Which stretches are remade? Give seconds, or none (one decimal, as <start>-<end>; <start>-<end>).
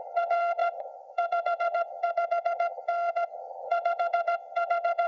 0.0-5.1